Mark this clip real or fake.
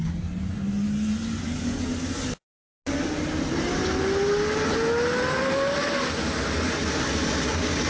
real